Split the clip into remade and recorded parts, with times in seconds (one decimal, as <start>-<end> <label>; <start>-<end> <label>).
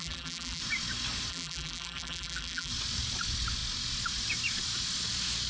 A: 0.0-0.6 remade; 0.6-1.3 recorded; 1.3-2.7 remade; 2.7-5.5 recorded